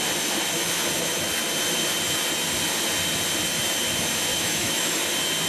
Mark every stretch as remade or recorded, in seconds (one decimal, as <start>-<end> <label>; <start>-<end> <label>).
0.0-4.3 recorded; 4.3-5.0 remade; 5.0-5.5 recorded